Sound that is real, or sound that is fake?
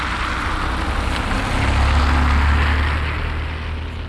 real